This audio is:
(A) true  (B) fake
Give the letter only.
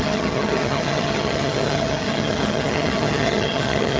B